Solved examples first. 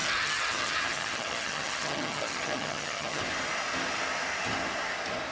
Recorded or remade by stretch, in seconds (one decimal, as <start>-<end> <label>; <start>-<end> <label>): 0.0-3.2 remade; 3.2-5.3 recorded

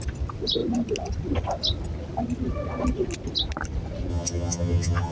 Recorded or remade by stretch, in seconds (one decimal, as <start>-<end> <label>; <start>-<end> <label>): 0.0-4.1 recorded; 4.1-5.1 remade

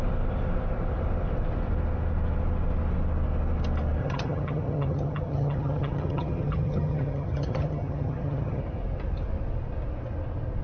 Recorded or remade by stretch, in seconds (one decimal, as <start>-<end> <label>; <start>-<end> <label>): 0.0-4.0 recorded; 4.0-8.6 remade; 8.6-10.6 recorded